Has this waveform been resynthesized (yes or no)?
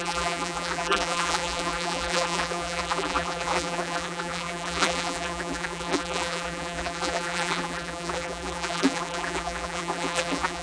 yes